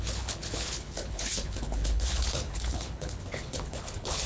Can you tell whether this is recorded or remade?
remade